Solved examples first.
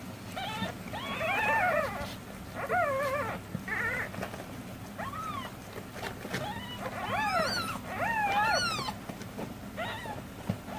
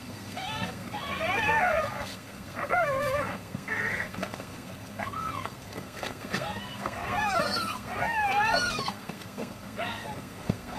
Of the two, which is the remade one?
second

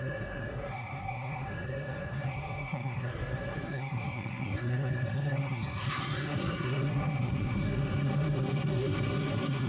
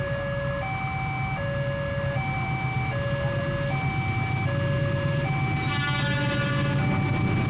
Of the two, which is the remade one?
first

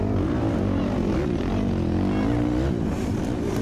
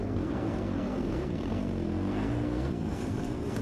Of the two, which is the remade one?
second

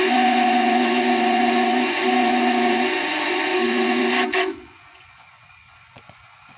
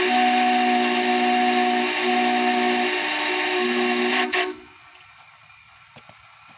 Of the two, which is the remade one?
first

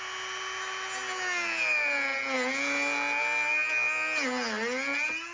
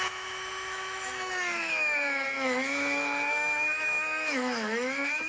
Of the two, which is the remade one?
second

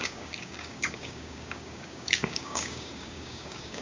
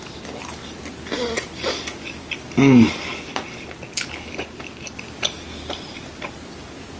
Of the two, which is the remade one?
first